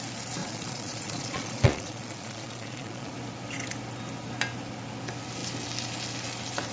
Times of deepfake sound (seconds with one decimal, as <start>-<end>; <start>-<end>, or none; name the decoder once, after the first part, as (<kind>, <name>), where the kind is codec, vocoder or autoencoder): 0.4-3.1 (vocoder, Vocos)